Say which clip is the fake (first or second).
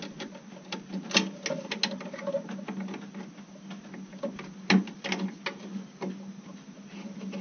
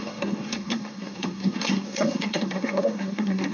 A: second